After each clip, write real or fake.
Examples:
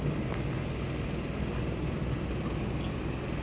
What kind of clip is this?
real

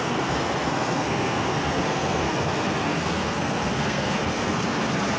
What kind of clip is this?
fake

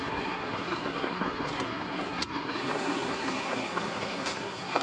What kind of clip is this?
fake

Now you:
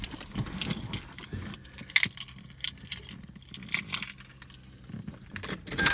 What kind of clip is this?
real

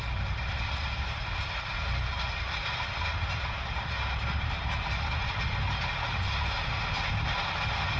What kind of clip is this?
real